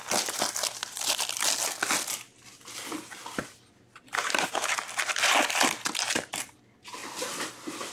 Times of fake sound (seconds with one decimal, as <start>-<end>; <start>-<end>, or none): none